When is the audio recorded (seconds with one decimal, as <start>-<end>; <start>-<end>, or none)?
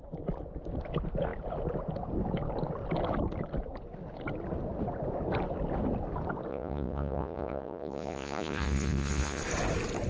0.0-6.5; 9.4-10.1